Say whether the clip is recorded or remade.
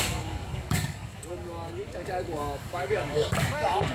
remade